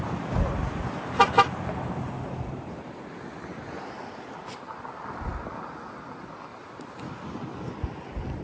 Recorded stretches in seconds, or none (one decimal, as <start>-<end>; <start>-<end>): 0.0-8.4